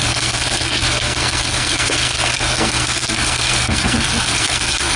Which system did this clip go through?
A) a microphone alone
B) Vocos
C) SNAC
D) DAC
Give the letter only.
C